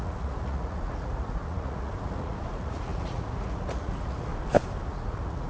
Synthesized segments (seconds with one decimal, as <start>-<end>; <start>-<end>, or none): 0.0-4.3; 4.9-5.5